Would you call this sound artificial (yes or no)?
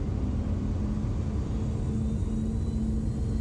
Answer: no